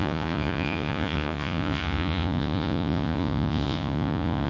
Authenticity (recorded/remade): remade